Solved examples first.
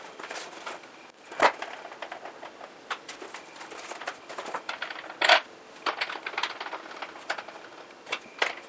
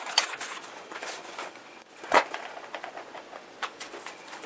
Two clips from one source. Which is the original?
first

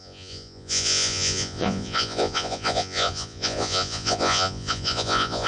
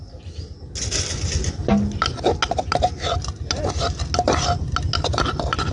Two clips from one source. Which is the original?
second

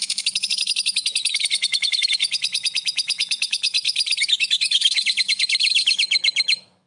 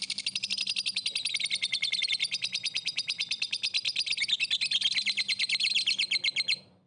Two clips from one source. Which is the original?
second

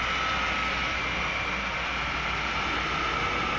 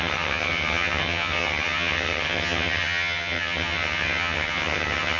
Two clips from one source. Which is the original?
first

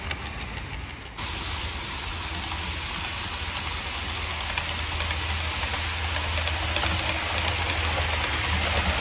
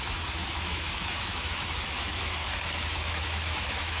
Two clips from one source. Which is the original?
first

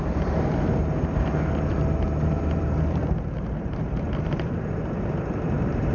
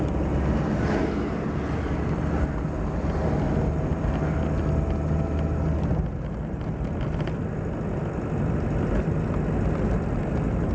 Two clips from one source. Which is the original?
second